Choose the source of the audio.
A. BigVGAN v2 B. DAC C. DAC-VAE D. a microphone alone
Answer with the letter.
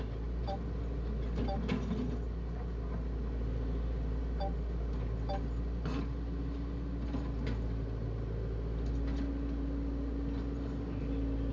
D